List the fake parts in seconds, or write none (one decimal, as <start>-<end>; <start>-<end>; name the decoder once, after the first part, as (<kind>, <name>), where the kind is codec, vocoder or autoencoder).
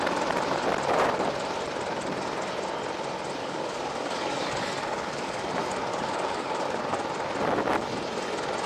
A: 3.4-5.5 (codec, DAC); 5.9-6.8